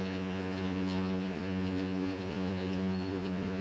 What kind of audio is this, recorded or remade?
remade